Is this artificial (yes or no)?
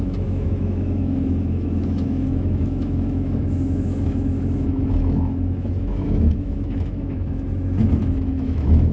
yes